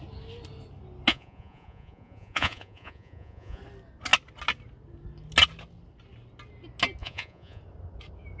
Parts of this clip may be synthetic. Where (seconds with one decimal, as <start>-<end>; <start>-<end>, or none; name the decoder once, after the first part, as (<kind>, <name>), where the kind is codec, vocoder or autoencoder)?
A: 1.1-3.6 (vocoder, Vocos); 7.0-7.6